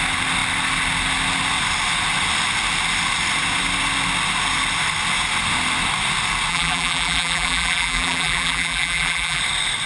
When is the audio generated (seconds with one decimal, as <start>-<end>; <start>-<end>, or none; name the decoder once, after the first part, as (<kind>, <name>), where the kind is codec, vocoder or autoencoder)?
6.5-9.4 (vocoder, BigVGAN v2)

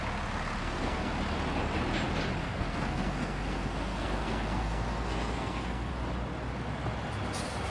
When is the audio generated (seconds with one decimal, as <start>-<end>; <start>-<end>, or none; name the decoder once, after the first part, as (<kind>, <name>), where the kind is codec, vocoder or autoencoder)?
0.6-1.1 (codec, SNAC); 2.4-5.9